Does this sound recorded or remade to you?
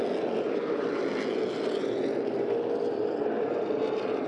recorded